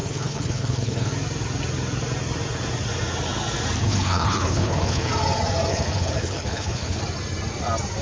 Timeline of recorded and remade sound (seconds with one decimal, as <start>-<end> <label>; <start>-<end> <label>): 0.0-1.1 remade; 1.1-3.8 recorded; 3.8-5.1 remade; 5.1-5.7 recorded; 5.7-7.0 remade; 7.0-8.0 recorded